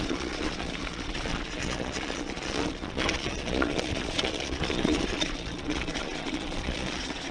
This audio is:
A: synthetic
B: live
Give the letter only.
A